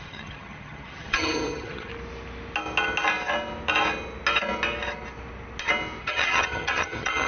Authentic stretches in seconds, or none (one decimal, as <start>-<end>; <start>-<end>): 1.9-6.0

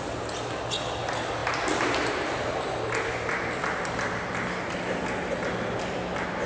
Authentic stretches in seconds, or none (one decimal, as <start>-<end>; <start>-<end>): 0.0-6.5

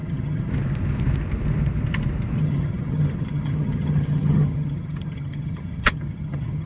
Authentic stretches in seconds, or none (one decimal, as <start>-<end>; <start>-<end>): 0.5-2.4

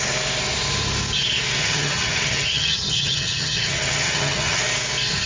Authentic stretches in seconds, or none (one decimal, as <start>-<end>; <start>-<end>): 0.0-1.6; 4.6-5.3

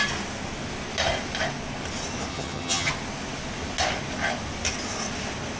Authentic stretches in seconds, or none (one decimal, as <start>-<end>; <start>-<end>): 0.0-2.3; 2.9-5.6

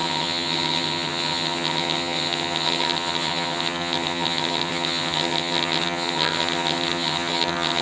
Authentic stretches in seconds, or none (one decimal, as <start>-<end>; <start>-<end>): none